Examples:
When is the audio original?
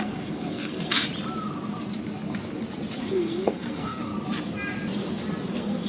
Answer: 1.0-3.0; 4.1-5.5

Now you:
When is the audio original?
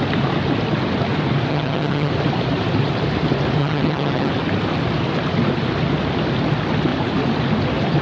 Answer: 0.0-1.5; 2.1-3.6; 4.3-8.0